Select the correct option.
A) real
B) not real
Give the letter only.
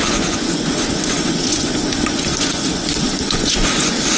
B